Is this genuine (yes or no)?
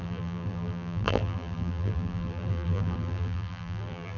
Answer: no